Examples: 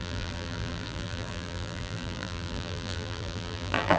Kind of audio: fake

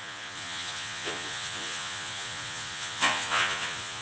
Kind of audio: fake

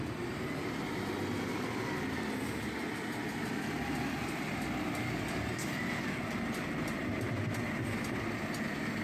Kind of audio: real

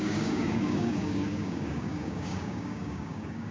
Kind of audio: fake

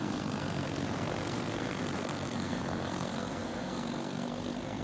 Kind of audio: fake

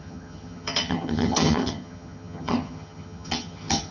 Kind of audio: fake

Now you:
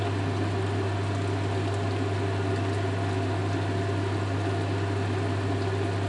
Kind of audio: real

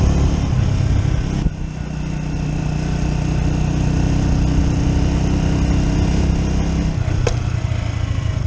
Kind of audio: real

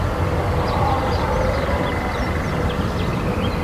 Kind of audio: real